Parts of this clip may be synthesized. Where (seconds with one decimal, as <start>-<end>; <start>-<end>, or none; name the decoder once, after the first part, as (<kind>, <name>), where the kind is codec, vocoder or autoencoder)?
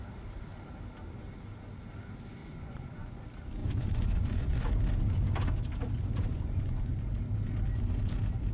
2.4-3.2 (vocoder, Vocos); 3.6-4.7; 6.3-7.0